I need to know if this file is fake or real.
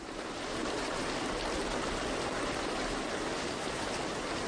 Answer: real